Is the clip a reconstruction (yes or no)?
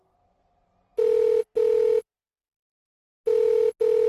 no